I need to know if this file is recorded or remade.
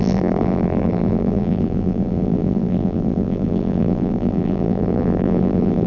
remade